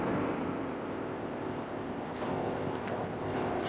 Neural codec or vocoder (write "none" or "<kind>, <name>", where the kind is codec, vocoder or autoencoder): codec, ZipCodec